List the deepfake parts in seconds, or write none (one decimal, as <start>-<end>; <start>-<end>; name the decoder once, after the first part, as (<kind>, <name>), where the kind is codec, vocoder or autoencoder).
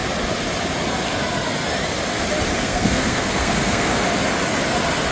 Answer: 2.6-3.9 (codec, SNAC)